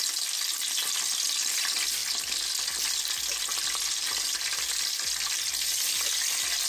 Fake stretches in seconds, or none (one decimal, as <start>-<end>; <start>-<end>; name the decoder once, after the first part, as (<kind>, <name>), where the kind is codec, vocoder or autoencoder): none